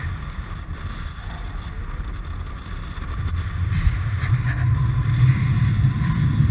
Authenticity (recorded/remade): recorded